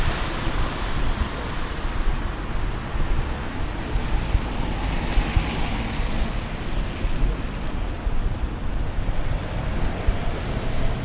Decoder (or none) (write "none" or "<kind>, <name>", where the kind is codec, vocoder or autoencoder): none